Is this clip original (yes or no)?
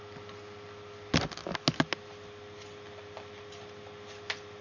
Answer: yes